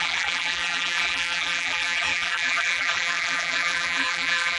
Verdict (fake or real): fake